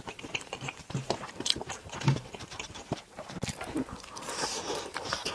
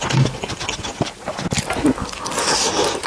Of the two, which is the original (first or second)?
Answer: second